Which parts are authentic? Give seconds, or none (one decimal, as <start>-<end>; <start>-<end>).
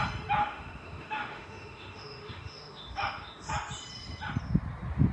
0.0-0.4; 3.5-5.1